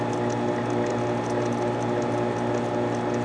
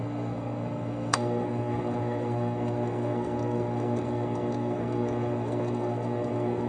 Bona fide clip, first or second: first